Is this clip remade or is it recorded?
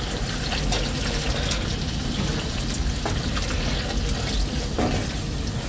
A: recorded